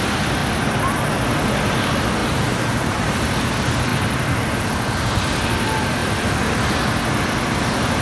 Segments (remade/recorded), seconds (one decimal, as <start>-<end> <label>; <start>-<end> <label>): 0.0-2.2 recorded; 2.2-3.4 remade; 3.4-8.0 recorded